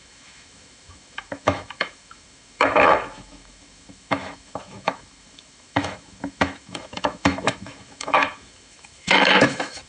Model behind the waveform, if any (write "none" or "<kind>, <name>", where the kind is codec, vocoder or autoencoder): autoencoder, DAC-VAE